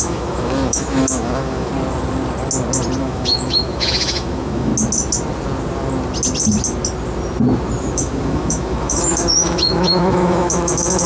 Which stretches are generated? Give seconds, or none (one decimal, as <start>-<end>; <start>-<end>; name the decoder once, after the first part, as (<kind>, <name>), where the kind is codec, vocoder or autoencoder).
0.0-1.7 (autoencoder, DAC-VAE); 3.0-4.7; 7.8-11.1